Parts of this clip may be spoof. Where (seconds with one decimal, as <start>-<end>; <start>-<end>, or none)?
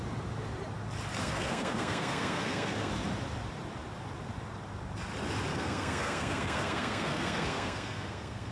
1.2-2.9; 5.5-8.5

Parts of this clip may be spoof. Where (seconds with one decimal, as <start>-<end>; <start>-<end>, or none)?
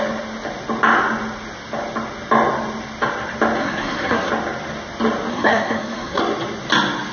3.6-4.3; 5.3-6.2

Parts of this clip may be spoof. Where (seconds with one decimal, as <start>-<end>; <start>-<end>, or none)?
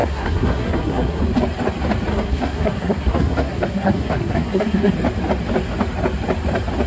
0.0-1.2; 2.1-4.9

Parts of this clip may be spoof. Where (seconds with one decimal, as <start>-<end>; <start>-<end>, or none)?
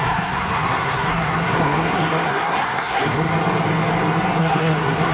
0.0-3.3; 4.4-5.1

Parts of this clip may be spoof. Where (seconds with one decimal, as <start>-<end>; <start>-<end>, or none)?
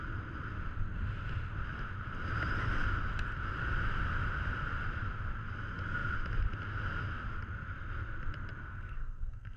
8.6-9.6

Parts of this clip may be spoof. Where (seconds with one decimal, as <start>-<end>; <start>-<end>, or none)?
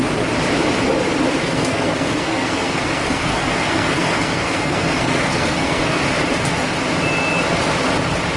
1.4-6.0